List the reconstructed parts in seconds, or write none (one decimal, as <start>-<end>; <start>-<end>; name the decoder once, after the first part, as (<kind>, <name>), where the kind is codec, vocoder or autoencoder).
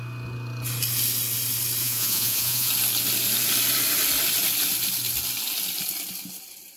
1.8-2.7 (vocoder, Vocos)